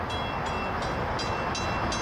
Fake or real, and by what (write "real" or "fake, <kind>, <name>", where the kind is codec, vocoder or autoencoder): real